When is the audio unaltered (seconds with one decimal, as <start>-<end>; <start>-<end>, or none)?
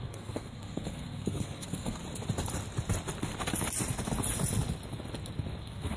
2.0-5.6